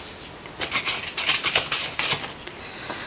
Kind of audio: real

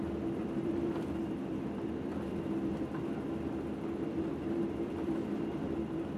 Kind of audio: fake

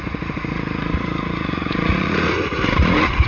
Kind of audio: fake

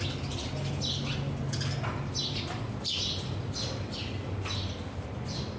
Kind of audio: real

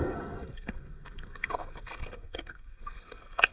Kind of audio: fake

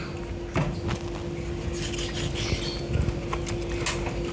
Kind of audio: real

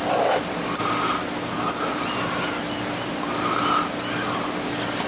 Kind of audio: real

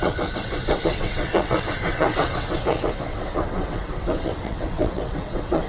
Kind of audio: fake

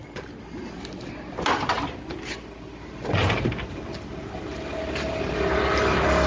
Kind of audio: real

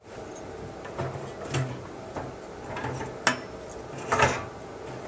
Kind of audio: real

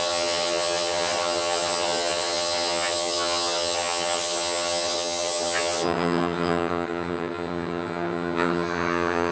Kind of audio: fake